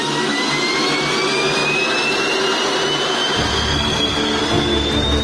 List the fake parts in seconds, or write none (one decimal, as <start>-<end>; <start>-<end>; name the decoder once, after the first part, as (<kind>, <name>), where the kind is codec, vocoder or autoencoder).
3.5-4.4 (codec, SNAC)